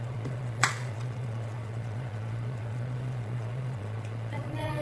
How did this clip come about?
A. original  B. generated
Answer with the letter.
B